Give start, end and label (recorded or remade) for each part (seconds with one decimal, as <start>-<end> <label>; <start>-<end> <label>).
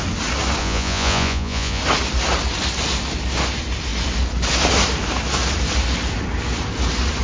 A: 0.0-0.6 recorded; 0.6-1.8 remade; 1.8-7.2 recorded